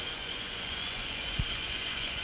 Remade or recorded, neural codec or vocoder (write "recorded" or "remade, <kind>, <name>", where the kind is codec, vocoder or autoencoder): remade, vocoder, Vocos